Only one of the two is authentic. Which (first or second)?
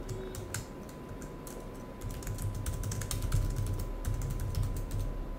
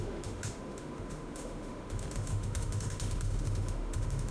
first